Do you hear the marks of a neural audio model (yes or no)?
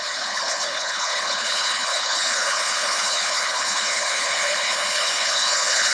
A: yes